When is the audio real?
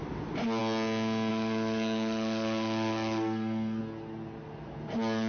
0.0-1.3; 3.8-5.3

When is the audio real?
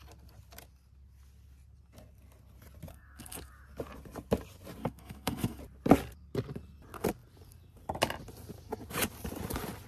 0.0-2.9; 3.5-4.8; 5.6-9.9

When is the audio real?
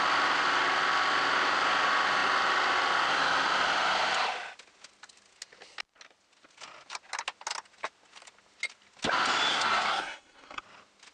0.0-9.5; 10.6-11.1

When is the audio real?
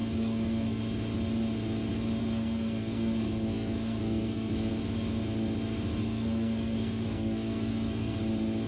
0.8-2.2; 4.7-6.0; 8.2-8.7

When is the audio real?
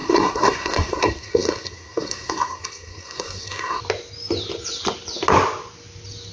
3.8-6.3